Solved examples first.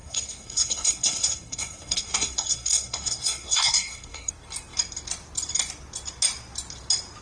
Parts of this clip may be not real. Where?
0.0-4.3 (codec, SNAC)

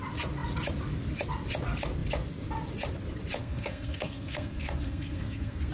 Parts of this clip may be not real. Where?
3.4-5.7 (codec, SNAC)

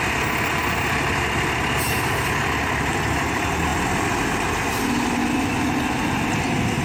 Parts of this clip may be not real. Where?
none